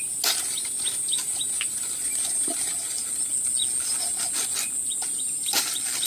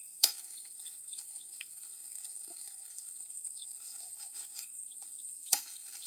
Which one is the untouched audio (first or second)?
first